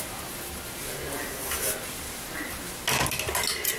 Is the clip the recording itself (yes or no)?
yes